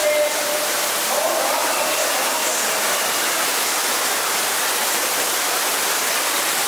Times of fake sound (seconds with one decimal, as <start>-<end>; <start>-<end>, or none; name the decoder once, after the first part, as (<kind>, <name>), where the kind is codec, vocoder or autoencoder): none